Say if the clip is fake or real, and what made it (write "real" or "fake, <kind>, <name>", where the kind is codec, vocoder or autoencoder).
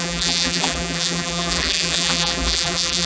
fake, vocoder, BigVGAN v2